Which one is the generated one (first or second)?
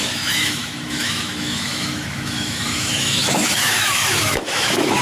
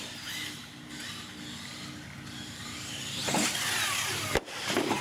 first